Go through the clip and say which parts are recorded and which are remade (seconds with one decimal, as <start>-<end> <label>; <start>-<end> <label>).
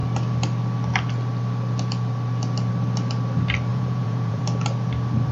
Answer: 0.0-3.7 recorded; 3.7-4.4 remade; 4.4-5.3 recorded